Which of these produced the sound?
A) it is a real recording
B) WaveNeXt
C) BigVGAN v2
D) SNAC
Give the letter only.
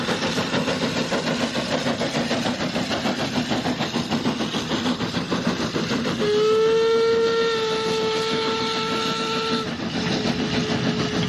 A